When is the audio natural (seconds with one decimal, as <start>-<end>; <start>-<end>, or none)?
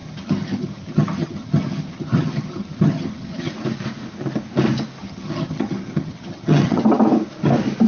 3.5-5.0; 6.8-7.9